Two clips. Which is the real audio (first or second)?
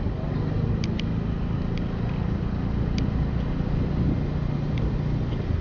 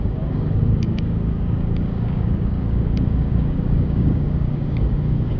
first